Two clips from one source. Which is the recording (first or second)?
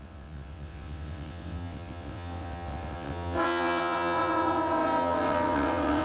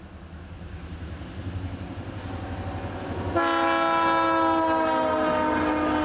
second